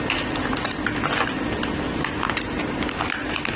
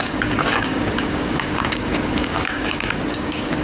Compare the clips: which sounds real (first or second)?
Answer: first